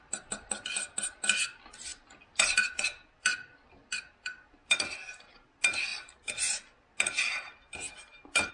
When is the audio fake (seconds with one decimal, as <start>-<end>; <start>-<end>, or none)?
none